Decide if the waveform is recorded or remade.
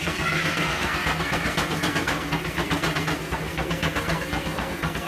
remade